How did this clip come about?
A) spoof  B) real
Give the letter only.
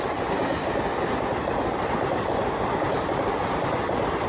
B